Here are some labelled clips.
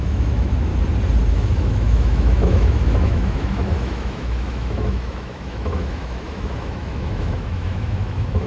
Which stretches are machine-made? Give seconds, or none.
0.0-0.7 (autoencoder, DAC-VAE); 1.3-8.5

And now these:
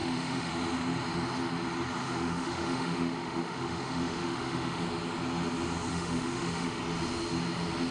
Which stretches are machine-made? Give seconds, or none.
0.0-0.5 (autoencoder, DAC-VAE); 2.0-4.8; 5.9-6.8

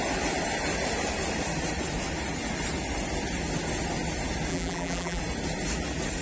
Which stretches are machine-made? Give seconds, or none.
4.5-5.2 (vocoder, BigVGAN v2)

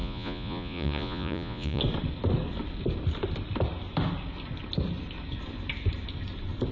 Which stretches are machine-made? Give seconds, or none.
0.0-1.8 (vocoder, Vocos)

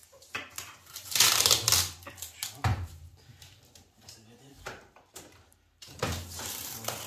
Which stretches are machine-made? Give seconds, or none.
0.0-1.4 (vocoder, BigVGAN v2); 2.7-7.1

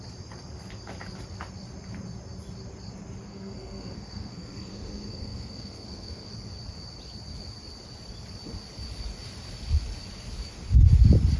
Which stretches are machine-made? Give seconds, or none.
3.3-6.3 (codec, SNAC)